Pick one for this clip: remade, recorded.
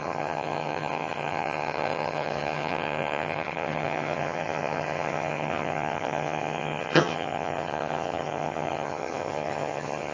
remade